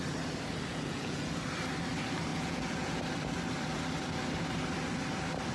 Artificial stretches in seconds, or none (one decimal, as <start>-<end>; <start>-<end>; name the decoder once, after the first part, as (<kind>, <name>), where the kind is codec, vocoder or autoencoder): 0.7-1.3 (vocoder, Vocos); 2.3-3.0